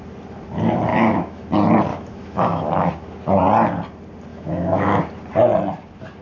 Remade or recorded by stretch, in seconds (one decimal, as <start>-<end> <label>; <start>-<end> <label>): 0.0-0.9 recorded; 0.9-1.5 remade; 1.5-1.9 recorded; 1.9-2.9 remade; 2.9-4.3 recorded; 4.3-5.0 remade; 5.0-6.2 recorded